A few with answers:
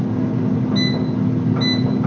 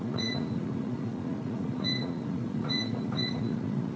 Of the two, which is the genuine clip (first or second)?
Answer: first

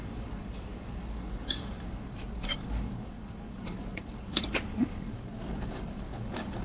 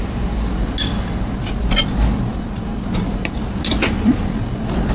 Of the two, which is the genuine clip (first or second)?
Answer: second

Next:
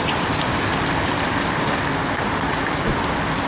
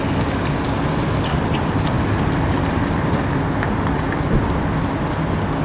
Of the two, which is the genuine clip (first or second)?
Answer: second